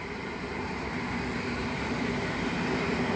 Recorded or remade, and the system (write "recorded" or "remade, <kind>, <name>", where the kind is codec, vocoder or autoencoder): remade, vocoder, BigVGAN v2